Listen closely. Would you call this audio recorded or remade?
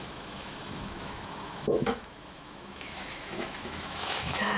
remade